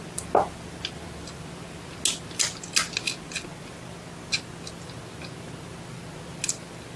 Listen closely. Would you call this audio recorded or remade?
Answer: recorded